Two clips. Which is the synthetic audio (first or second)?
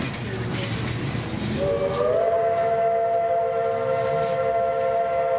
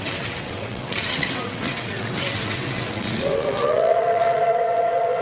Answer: second